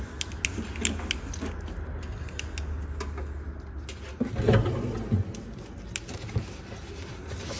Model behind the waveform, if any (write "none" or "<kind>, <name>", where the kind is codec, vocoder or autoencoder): none